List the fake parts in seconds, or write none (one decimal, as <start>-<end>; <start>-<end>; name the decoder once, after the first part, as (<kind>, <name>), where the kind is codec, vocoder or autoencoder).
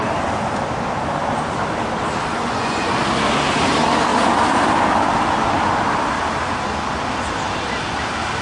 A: 2.3-2.9 (vocoder, Vocos)